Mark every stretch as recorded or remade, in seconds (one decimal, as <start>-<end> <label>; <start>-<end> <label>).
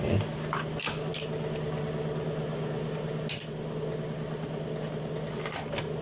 0.0-6.0 recorded